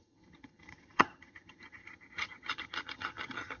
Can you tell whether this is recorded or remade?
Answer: remade